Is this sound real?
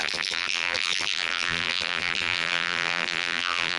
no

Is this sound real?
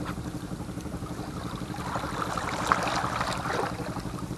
yes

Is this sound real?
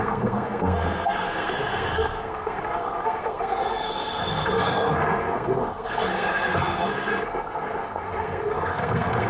no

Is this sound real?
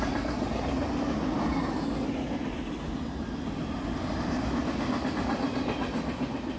yes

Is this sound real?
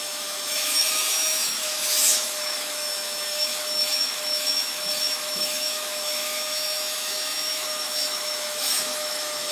no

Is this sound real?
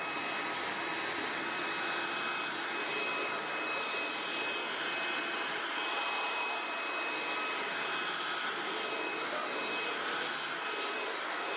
yes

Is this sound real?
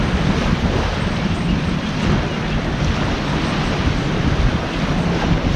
yes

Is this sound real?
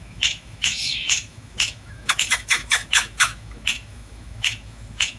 no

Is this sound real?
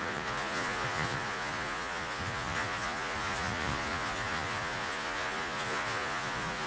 no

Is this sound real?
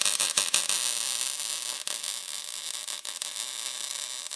yes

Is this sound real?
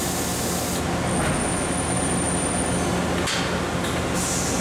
yes